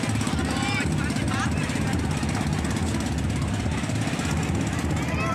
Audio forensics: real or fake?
real